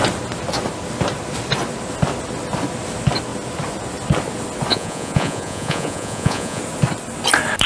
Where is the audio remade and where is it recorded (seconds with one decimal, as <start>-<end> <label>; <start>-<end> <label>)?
0.0-4.7 recorded; 4.7-6.6 remade; 6.6-7.7 recorded